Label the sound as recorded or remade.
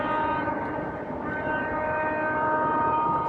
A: remade